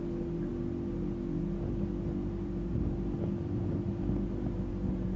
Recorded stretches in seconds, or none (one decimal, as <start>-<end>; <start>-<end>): 0.0-5.2